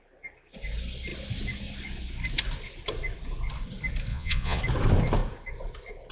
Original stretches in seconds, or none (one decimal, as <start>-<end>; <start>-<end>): 0.0-4.1; 4.6-6.1